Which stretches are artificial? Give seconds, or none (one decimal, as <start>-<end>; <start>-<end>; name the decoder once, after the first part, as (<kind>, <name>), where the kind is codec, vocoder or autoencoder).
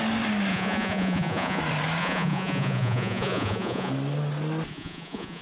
0.5-1.6 (vocoder, Vocos); 2.0-3.9; 4.7-5.4